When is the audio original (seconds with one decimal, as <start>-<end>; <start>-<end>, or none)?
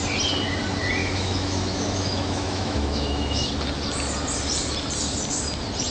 0.0-1.0; 3.5-5.9